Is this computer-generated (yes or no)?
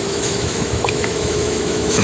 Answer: yes